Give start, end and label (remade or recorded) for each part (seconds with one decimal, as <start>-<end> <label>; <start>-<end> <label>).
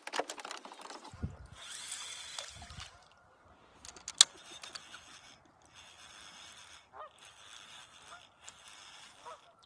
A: 0.0-9.7 recorded